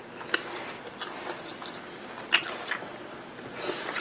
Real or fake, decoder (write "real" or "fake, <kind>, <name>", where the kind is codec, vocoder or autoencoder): real